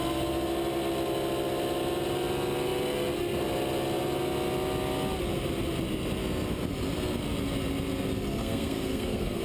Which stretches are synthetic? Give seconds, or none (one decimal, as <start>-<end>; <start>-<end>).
8.4-9.4